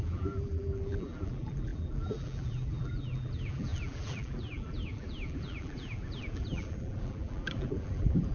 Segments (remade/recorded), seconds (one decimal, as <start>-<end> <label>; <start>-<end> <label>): 0.0-8.3 remade